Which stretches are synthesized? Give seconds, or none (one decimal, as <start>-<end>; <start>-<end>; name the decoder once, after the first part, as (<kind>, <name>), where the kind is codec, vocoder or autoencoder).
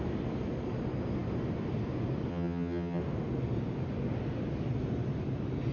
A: 2.3-3.0 (vocoder, HiFi-GAN)